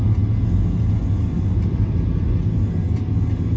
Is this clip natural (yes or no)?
yes